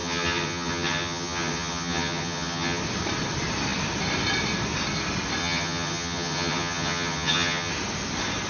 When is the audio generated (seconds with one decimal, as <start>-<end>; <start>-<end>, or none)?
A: 0.0-2.8; 5.4-7.7